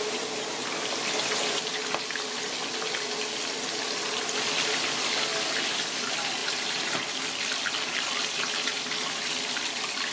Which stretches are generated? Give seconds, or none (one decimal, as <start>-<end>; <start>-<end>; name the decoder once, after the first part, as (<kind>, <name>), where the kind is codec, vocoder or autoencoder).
none